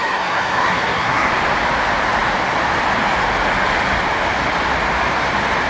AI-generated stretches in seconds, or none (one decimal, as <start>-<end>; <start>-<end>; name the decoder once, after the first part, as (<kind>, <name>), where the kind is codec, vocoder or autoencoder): 0.0-1.3 (codec, SNAC)